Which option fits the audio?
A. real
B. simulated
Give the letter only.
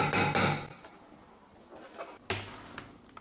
A